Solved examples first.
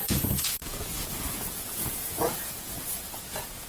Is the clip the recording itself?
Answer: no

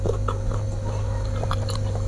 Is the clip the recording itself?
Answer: yes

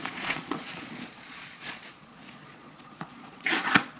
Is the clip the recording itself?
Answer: no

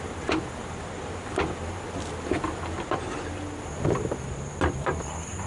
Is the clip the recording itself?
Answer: yes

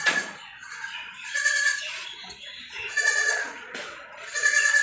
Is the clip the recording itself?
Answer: no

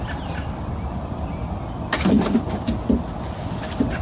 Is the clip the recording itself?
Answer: yes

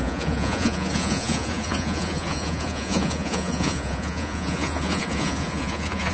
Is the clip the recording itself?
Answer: no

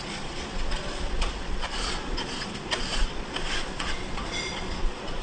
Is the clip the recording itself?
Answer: no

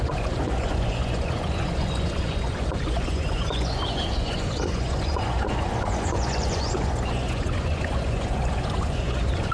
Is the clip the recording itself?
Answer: no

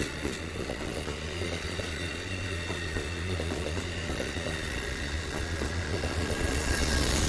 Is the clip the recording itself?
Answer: no